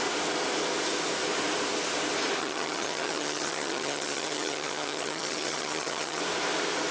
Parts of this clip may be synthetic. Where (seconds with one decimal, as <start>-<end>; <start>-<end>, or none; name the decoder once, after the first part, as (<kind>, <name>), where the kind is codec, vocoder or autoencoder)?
2.4-6.2 (vocoder, HiFi-GAN)